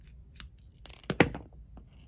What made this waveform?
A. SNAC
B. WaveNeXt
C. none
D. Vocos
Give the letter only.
C